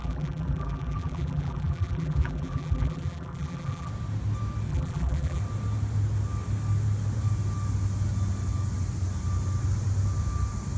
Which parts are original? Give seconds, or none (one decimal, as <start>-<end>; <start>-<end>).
3.9-4.7; 5.4-10.8